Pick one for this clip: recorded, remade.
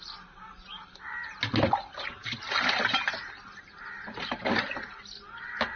recorded